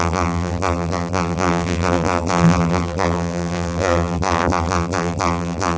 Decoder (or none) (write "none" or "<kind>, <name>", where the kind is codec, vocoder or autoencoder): vocoder, BigVGAN v2